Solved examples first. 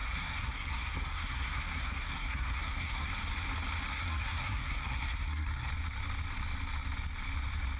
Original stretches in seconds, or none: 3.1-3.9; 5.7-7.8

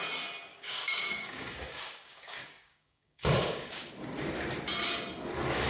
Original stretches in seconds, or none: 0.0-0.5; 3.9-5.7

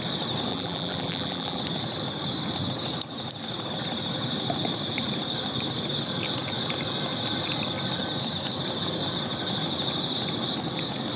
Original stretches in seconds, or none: 0.0-0.5; 1.6-11.2

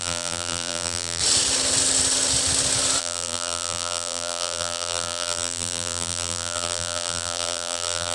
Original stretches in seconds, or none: 1.2-3.0

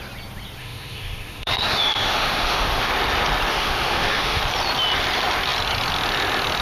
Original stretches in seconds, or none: 0.0-0.6; 2.9-3.5; 4.4-6.6